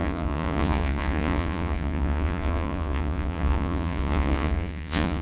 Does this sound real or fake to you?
fake